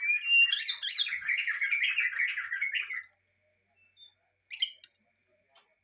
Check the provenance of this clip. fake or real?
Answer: real